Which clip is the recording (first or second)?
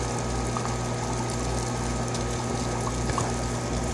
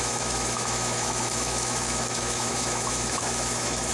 first